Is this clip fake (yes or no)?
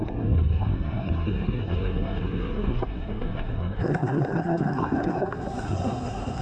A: yes